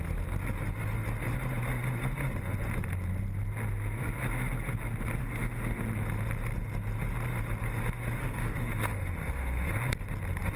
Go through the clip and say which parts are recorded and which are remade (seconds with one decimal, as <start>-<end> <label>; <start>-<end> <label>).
0.0-5.2 recorded; 5.2-5.8 remade; 5.8-8.2 recorded; 8.2-9.7 remade; 9.7-10.6 recorded